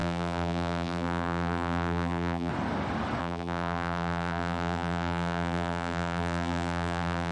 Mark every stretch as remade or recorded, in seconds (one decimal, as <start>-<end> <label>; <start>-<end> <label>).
0.0-2.5 remade; 2.5-3.2 recorded; 3.2-7.3 remade